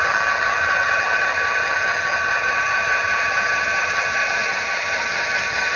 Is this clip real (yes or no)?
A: no